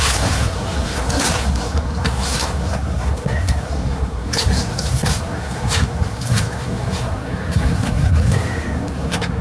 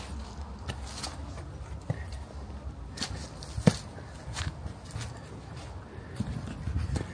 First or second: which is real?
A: second